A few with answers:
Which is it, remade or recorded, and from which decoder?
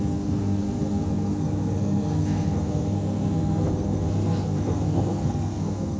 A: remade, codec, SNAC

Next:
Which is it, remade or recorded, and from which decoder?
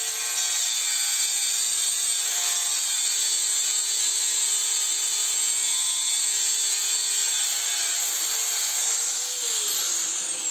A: recorded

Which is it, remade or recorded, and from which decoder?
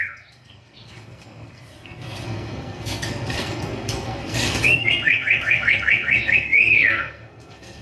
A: remade, codec, SNAC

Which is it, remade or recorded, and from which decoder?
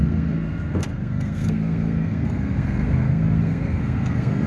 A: remade, codec, SNAC